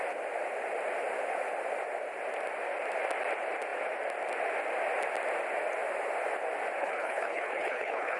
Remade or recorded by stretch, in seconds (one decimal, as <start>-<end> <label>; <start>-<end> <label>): 0.0-6.8 recorded; 6.8-8.2 remade